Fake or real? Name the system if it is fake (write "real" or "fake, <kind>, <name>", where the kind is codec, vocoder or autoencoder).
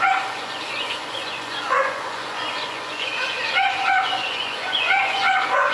fake, vocoder, Vocos